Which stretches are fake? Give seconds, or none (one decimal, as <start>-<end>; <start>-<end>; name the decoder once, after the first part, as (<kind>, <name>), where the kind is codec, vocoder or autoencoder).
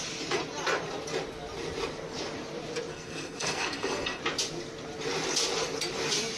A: 2.9-4.2 (codec, SNAC)